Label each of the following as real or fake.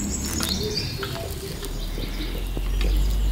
real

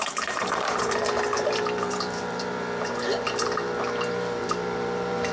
fake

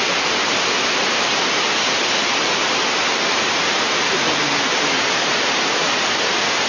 fake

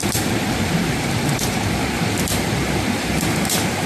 fake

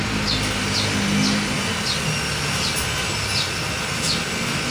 real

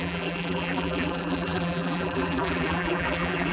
fake